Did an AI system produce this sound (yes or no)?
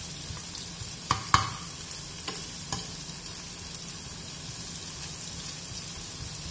no